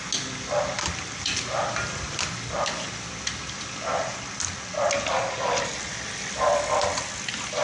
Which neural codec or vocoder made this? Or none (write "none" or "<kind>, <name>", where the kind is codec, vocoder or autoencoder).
none